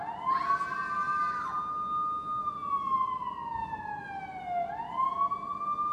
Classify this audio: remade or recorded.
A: recorded